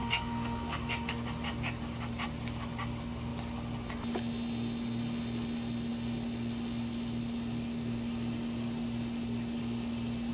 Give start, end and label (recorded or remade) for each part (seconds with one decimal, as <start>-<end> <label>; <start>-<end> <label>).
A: 0.0-1.1 remade; 1.1-10.3 recorded